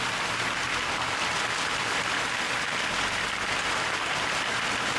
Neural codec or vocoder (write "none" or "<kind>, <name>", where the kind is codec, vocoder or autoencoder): none